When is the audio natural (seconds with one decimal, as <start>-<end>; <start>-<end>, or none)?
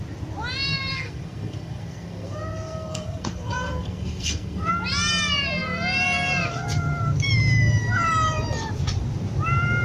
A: 0.0-0.9; 4.7-9.8